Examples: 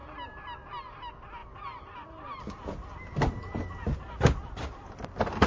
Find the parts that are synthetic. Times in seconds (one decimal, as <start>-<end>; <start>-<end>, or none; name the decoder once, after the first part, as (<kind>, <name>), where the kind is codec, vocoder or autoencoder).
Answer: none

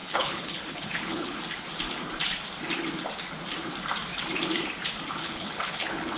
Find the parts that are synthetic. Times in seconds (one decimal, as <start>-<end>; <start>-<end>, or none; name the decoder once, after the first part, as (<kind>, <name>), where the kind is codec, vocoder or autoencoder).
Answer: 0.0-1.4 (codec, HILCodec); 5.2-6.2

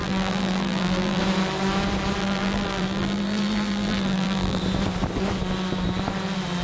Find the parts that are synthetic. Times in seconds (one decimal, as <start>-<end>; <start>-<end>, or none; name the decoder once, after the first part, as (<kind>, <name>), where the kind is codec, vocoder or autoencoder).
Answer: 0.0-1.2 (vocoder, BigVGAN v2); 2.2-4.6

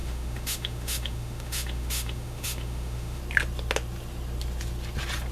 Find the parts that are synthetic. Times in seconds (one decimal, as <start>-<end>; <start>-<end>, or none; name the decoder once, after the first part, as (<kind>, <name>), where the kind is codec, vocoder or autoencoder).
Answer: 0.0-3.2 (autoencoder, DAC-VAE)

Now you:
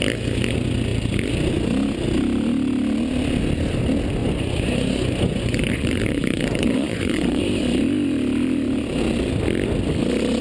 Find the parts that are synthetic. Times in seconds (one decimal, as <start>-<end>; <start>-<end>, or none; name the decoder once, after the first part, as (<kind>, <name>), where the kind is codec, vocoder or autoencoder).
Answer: 4.2-7.4 (vocoder, Vocos)

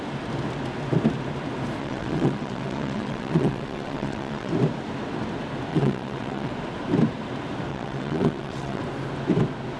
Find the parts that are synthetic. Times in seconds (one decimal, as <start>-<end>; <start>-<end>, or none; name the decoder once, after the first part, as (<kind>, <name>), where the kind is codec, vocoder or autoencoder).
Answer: 1.8-4.5 (vocoder, WaveNeXt); 5.7-6.5; 7.7-8.8